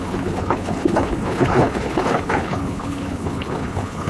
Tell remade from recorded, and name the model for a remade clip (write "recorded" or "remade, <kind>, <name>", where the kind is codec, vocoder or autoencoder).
remade, codec, HILCodec